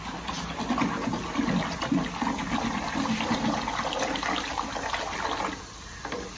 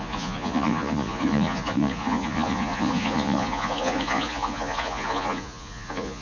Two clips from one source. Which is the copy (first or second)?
second